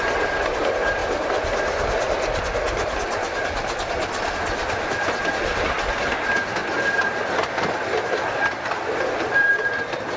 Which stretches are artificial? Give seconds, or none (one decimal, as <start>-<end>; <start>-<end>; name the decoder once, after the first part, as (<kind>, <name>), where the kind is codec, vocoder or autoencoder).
none